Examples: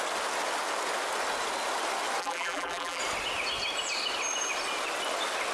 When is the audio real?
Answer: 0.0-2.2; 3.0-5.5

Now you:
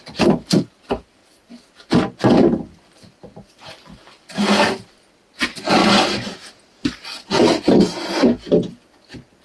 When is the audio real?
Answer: 0.0-9.4

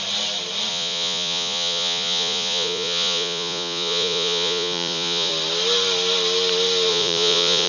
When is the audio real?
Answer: 0.0-0.7; 5.3-6.9

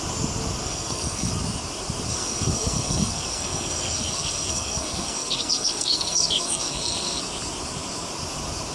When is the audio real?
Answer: 0.0-0.6; 1.3-2.1; 7.2-8.7

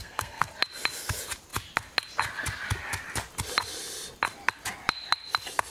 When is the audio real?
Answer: 0.5-5.7

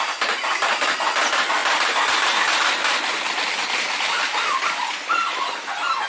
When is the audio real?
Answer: 0.0-6.1

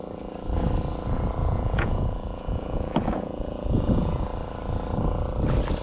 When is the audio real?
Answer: 0.0-1.4; 4.2-5.8